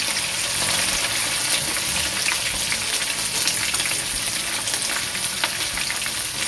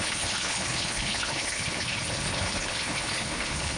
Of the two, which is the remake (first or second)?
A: second